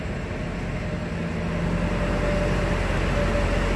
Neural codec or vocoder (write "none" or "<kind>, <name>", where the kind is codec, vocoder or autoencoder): none